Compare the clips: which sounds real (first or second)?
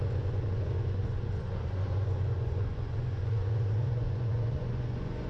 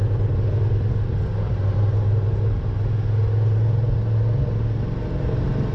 second